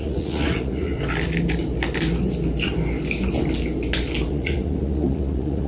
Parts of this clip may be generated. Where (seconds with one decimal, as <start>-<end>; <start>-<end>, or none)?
0.0-0.9; 4.3-5.7